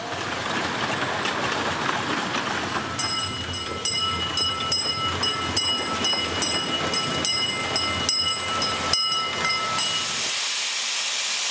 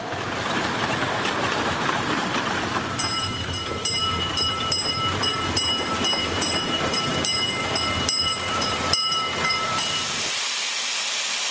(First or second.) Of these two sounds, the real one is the first